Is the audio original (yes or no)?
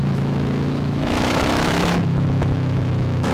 no